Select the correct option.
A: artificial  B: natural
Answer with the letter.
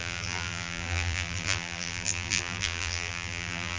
A